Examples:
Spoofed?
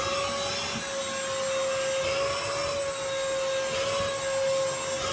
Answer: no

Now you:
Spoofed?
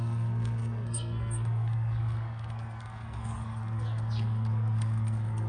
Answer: yes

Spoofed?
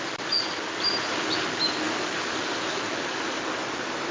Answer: no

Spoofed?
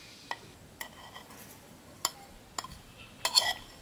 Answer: no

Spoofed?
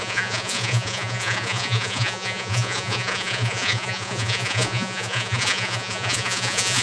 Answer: yes